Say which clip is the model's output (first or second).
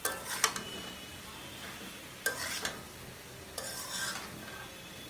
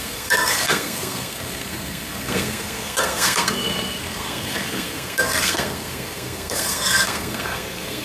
second